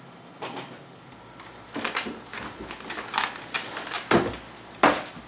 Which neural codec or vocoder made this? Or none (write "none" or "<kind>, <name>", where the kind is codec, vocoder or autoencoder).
none